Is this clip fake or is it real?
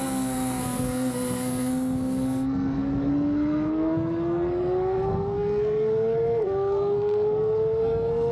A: fake